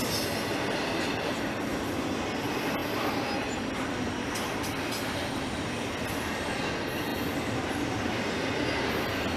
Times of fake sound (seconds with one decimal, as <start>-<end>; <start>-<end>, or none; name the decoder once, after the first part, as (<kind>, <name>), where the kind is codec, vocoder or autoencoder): none